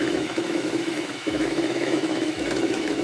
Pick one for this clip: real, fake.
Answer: fake